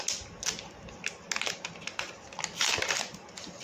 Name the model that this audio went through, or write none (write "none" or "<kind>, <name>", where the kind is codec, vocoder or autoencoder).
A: none